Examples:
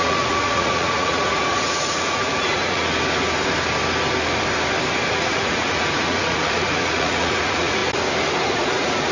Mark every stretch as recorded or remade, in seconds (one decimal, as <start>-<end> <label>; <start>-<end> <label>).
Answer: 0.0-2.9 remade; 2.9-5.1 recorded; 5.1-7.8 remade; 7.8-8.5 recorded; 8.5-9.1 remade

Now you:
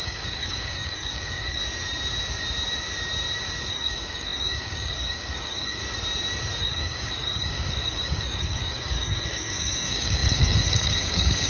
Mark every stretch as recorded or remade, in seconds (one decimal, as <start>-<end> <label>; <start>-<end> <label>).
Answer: 0.0-1.6 remade; 1.6-3.7 recorded; 3.7-5.8 remade; 5.8-6.6 recorded; 6.6-11.5 remade

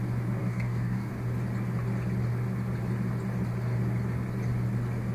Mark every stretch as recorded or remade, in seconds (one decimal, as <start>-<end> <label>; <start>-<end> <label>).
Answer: 0.0-0.4 recorded; 0.4-1.1 remade; 1.1-5.1 recorded

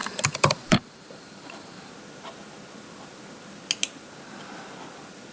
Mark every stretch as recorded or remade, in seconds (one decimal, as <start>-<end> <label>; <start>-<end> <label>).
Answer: 0.0-1.9 remade; 1.9-5.3 recorded

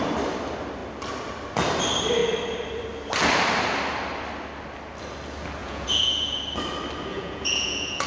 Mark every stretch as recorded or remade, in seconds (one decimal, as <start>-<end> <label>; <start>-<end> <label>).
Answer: 0.0-5.6 recorded; 5.6-6.4 remade; 6.4-7.1 recorded; 7.1-8.1 remade